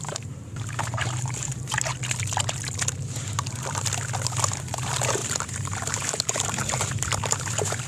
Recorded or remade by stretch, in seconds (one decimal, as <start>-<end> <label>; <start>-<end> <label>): 0.0-1.9 remade; 1.9-4.7 recorded; 4.7-7.9 remade